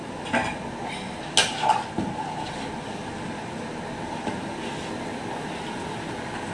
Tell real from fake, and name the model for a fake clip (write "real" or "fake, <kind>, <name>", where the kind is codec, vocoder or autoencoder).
real